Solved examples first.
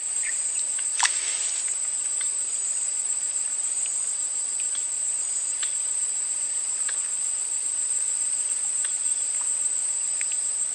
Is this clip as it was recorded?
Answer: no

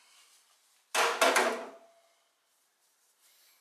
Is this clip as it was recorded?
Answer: yes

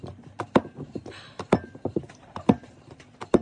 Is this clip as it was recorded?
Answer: no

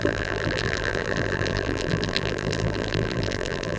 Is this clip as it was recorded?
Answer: no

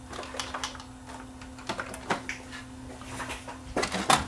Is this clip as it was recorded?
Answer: yes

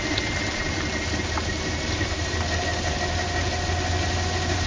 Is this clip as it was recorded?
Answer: yes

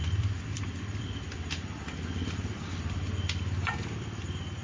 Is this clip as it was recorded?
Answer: no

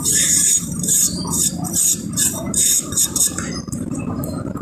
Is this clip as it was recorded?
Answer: no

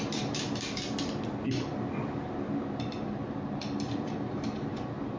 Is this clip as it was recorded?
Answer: yes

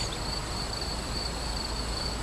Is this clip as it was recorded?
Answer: yes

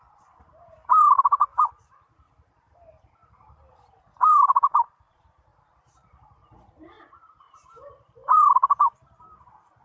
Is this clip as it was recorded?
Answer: no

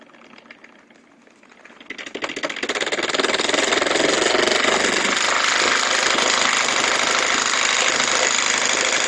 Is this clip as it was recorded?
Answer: yes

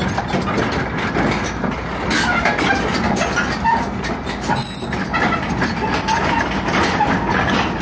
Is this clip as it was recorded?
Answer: yes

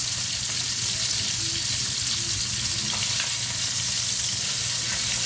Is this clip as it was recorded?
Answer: yes